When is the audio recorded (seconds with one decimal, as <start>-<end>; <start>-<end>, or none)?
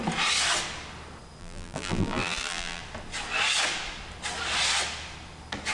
0.0-1.4; 2.8-5.7